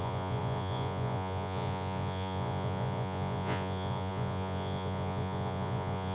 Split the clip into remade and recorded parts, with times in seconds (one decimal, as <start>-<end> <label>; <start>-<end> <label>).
0.0-6.1 remade